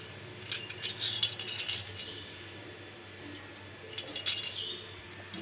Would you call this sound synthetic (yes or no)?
no